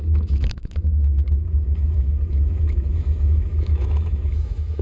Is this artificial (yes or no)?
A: yes